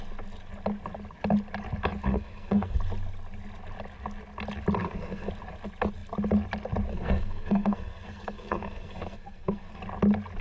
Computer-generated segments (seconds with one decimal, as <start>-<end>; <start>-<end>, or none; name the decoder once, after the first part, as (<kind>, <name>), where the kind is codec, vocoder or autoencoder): 2.0-2.8 (codec, SNAC); 4.8-5.3; 6.9-9.8